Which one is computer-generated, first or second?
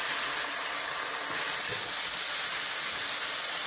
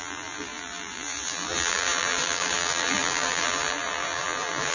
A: second